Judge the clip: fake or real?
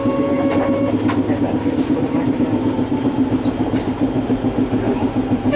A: fake